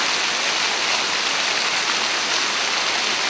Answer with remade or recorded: recorded